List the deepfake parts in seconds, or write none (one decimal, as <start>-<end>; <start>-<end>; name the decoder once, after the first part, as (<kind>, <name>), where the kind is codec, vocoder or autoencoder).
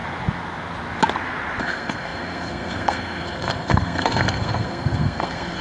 1.6-5.6 (codec, SNAC)